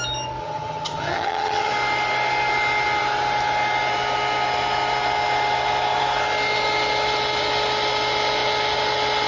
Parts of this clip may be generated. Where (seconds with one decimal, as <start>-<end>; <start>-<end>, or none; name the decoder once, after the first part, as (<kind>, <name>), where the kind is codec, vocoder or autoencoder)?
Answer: 0.4-1.7 (vocoder, HiFi-GAN)